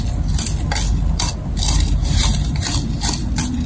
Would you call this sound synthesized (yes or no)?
no